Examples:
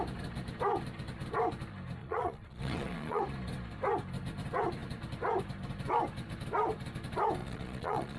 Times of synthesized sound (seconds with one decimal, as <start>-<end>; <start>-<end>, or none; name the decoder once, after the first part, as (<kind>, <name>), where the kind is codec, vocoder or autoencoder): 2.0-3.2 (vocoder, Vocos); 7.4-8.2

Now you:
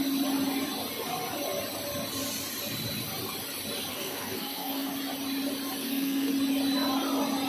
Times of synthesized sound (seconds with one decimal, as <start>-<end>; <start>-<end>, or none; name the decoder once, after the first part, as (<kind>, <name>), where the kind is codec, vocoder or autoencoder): 3.9-4.9 (codec, SNAC); 5.8-6.3

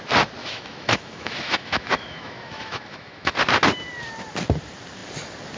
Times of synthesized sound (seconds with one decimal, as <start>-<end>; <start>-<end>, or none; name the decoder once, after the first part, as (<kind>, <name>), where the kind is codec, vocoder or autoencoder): 0.4-3.3 (autoencoder, DAC-VAE)

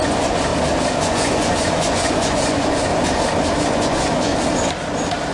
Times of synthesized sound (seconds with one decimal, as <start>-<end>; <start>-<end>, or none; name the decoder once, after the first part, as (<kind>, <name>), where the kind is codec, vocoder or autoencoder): 0.0-0.5 (vocoder, Vocos); 1.0-2.9; 3.6-4.3

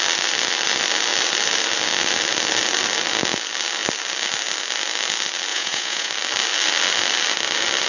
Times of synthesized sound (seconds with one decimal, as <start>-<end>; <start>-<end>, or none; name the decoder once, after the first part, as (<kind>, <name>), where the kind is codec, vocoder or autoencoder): 5.5-6.1 (vocoder, Vocos)

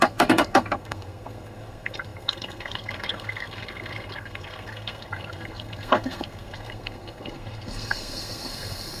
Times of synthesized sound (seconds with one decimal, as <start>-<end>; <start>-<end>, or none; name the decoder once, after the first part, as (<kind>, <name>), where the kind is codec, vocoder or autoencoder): 0.0-9.0 (codec, SNAC)